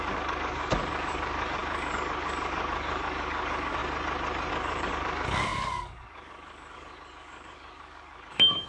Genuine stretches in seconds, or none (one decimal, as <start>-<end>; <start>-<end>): 3.8-4.5